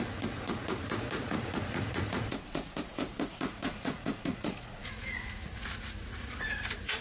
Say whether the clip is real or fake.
fake